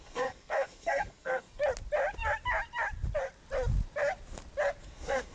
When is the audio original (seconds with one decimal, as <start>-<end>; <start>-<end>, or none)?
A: 1.6-4.8